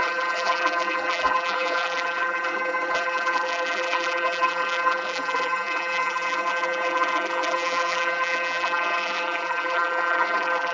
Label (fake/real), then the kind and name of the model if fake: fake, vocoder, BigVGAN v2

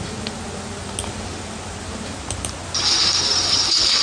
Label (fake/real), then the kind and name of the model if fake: real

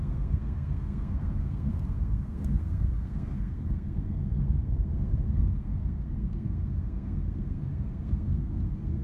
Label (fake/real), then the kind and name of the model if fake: fake, codec, SNAC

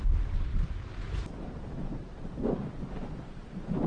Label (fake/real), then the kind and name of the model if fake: fake, vocoder, BigVGAN v2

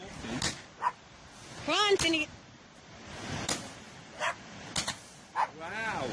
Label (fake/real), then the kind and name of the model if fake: real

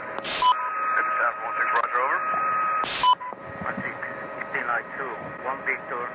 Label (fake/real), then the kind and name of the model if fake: real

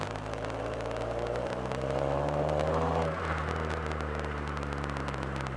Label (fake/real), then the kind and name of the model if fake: fake, vocoder, BigVGAN v2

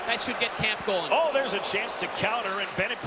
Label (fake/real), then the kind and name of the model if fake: real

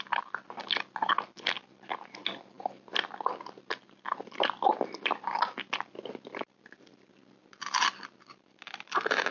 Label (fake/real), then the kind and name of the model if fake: real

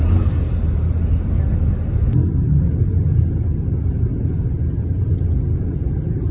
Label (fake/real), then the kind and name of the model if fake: real